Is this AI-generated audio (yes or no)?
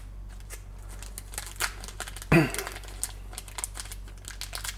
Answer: no